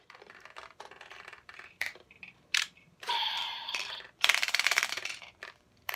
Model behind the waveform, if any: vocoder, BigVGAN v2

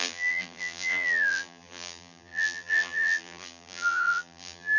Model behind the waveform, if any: vocoder, BigVGAN v2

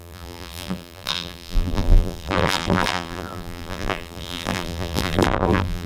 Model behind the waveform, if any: vocoder, BigVGAN v2